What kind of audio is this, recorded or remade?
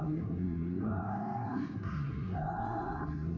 remade